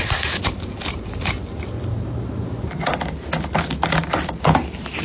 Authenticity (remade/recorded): remade